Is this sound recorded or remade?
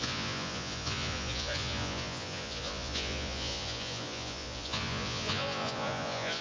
remade